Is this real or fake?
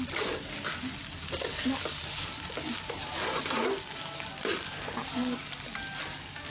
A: real